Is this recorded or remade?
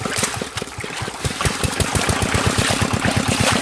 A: recorded